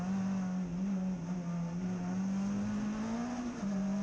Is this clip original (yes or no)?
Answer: yes